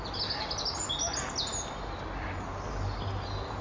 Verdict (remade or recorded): recorded